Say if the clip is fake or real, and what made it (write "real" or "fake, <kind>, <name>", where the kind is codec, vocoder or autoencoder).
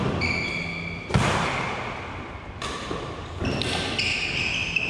real